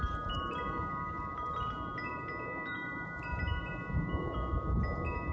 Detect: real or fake fake